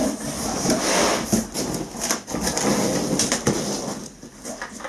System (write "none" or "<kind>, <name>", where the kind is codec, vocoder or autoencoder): none